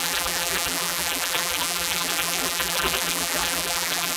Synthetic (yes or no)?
yes